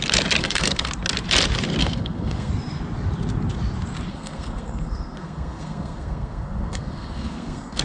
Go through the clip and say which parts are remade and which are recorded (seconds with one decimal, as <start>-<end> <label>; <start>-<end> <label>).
0.0-0.4 recorded; 0.4-0.9 remade; 0.9-1.8 recorded; 1.8-2.5 remade; 2.5-4.1 recorded; 4.1-7.8 remade